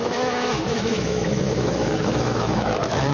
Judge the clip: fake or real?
fake